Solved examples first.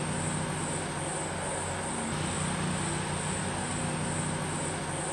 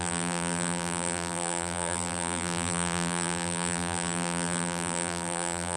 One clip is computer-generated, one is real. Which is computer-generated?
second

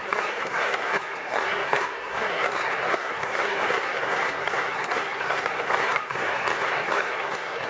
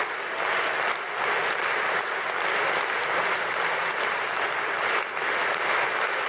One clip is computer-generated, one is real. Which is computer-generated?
first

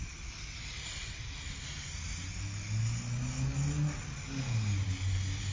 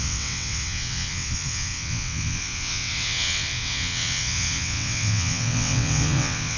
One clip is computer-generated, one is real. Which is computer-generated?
second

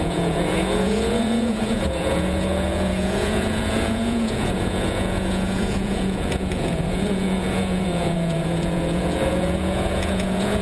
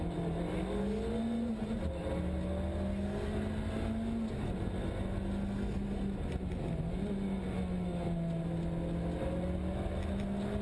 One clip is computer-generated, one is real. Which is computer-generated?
first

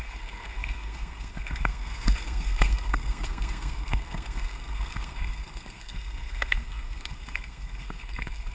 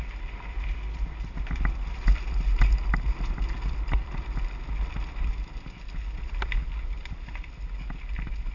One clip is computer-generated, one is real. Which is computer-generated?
first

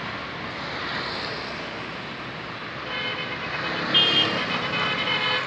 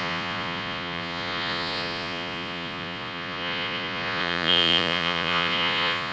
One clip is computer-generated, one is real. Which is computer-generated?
second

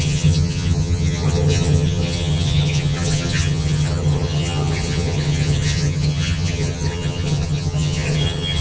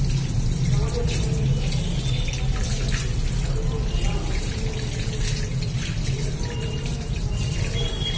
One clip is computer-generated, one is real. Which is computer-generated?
first